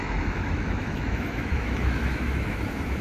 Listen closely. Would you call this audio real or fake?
fake